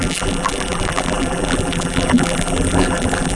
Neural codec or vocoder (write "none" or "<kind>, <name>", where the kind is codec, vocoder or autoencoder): vocoder, BigVGAN v2